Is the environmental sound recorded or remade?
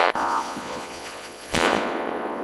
remade